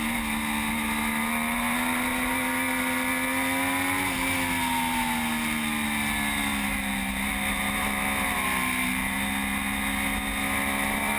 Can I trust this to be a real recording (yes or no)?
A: yes